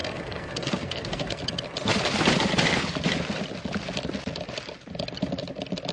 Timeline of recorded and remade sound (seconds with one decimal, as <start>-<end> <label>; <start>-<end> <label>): 0.0-1.4 remade; 1.4-5.9 recorded